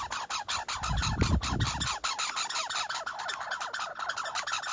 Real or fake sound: real